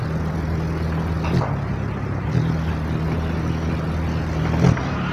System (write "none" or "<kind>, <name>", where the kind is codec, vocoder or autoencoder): none